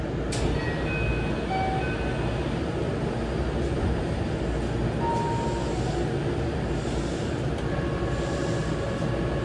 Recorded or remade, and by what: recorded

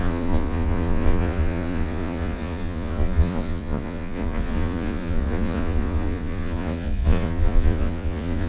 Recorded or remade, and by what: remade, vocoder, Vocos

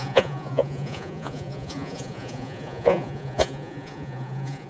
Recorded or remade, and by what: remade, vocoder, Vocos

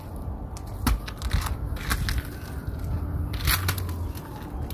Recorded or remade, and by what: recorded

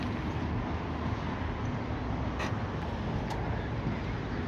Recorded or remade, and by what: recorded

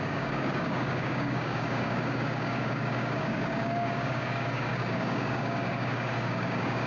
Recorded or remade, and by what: remade, codec, DAC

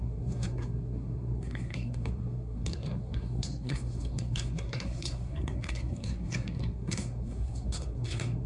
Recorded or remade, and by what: remade, codec, SNAC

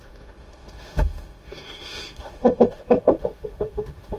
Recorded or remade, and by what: remade, autoencoder, DAC-VAE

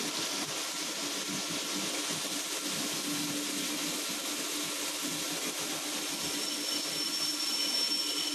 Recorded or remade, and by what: recorded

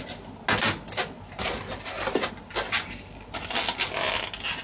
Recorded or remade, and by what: recorded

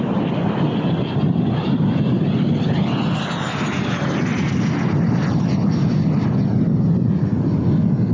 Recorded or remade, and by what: recorded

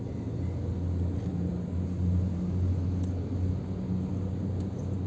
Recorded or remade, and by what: recorded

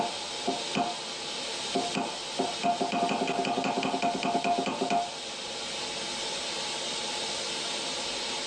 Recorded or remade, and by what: recorded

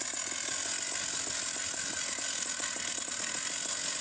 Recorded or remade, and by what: recorded